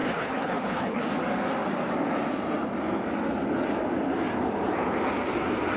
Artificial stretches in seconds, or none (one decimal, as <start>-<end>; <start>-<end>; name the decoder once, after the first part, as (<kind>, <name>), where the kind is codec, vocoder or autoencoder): 0.0-1.0 (codec, HILCodec)